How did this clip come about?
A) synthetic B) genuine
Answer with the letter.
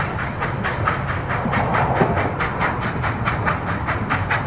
B